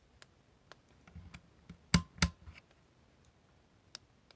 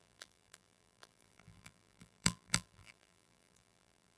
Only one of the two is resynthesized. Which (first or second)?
second